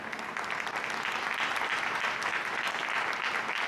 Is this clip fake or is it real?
real